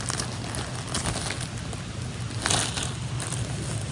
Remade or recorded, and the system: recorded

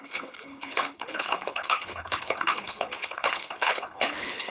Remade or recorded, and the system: remade, codec, HILCodec